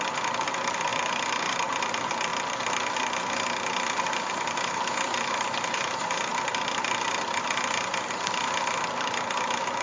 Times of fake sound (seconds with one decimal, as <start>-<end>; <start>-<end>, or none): 0.0-2.3; 4.3-6.3; 7.3-9.8